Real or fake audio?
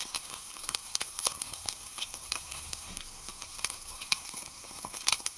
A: fake